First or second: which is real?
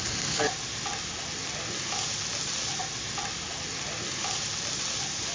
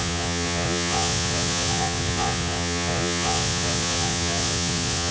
first